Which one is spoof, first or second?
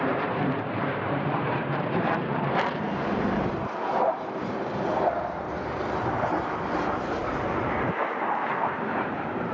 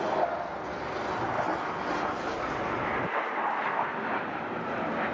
first